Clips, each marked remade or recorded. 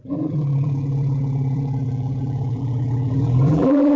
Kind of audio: remade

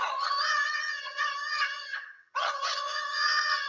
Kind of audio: remade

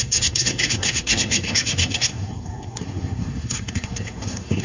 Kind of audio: remade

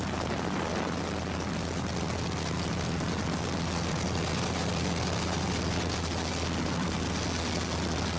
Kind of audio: recorded